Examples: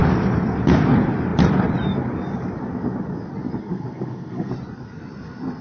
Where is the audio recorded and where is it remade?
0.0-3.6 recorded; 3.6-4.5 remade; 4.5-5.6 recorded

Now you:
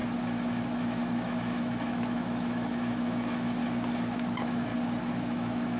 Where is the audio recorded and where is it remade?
0.0-0.8 recorded; 0.8-3.6 remade; 3.6-4.3 recorded; 4.3-4.7 remade; 4.7-5.2 recorded; 5.2-5.8 remade

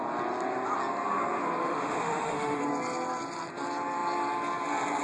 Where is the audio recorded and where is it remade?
0.0-1.6 recorded; 1.6-2.6 remade; 2.6-5.0 recorded

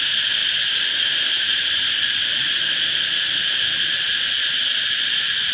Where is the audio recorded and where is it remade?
0.0-0.4 recorded; 0.4-1.0 remade; 1.0-1.5 recorded; 1.5-3.4 remade; 3.4-5.5 recorded